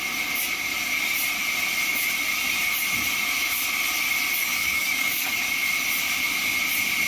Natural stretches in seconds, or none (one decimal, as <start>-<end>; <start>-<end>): 0.0-4.4; 5.4-7.1